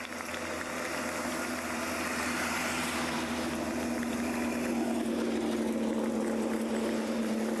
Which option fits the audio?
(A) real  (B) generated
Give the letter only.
A